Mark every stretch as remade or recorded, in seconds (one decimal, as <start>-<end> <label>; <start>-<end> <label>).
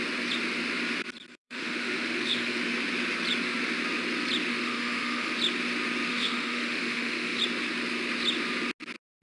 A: 0.0-1.3 recorded; 1.3-2.6 remade; 2.6-4.5 recorded; 4.5-5.3 remade; 5.3-6.1 recorded; 6.1-7.4 remade; 7.4-9.2 recorded